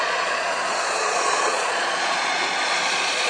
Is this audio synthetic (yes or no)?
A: yes